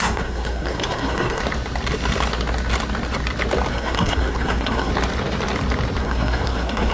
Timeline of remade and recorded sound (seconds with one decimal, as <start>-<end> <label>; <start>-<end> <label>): 0.0-1.4 remade; 1.4-3.7 recorded; 3.7-4.9 remade; 4.9-6.0 recorded; 6.0-6.9 remade